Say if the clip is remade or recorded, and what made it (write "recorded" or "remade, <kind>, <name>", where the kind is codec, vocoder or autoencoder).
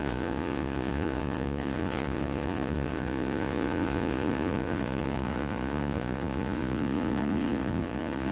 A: remade, vocoder, Vocos